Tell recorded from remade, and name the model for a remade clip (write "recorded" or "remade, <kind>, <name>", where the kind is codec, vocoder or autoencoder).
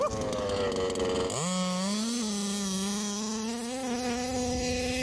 recorded